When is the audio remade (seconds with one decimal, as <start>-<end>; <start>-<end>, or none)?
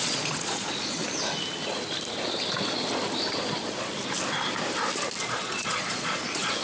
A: 0.0-1.0; 3.6-4.0; 5.2-6.6